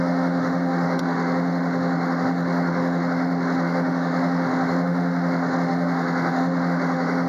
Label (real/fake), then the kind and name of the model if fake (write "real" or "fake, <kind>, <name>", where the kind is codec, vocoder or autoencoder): fake, autoencoder, DAC-VAE